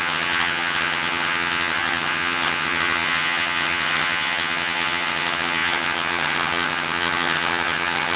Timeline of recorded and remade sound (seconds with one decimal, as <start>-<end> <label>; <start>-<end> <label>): 0.0-8.2 remade